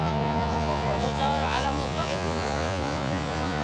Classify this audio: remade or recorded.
remade